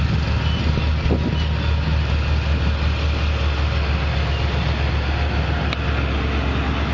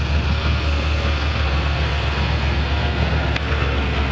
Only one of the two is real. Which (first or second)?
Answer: first